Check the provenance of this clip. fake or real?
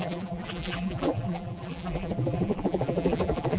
fake